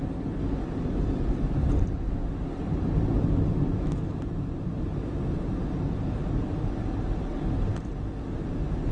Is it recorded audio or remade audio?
recorded